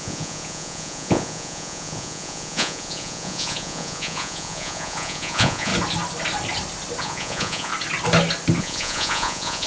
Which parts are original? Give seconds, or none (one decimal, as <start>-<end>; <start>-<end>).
5.7-7.0; 7.7-8.6

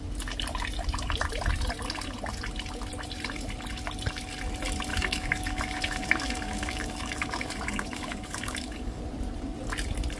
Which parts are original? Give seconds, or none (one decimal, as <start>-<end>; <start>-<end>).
0.0-4.9; 9.0-10.2

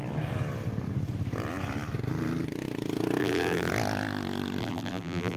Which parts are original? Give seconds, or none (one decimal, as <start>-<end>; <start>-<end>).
0.0-3.2; 3.7-4.6